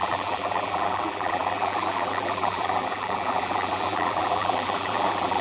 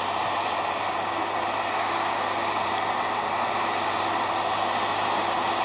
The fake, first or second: first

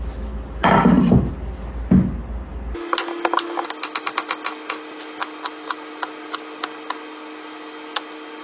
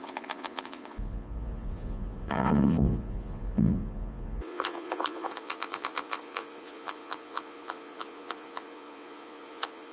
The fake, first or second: second